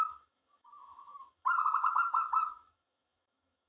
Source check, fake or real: fake